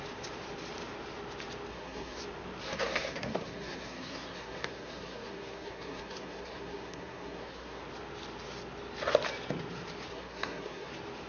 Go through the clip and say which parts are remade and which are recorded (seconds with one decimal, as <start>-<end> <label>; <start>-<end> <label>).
0.0-1.7 recorded; 1.7-2.2 remade; 2.2-2.6 recorded; 2.6-7.8 remade; 7.8-10.1 recorded; 10.1-10.9 remade; 10.9-11.3 recorded